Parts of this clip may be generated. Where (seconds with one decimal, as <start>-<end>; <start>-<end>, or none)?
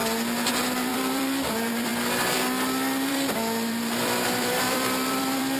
0.9-1.9; 3.1-5.6